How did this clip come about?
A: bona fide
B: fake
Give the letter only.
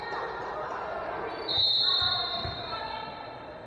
B